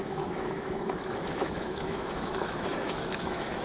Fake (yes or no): yes